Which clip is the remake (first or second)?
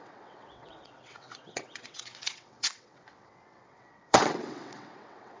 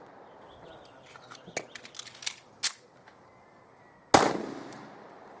first